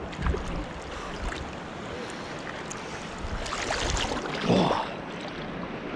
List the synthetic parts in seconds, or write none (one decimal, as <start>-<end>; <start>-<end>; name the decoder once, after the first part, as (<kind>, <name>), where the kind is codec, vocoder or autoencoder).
none